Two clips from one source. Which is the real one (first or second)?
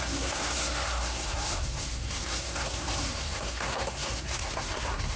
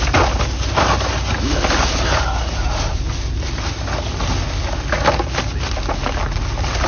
second